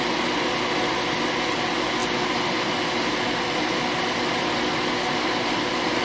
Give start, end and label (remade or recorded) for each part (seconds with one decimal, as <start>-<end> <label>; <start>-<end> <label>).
0.0-6.0 recorded